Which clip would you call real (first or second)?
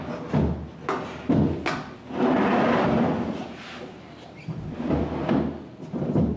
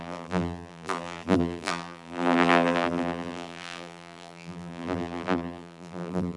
first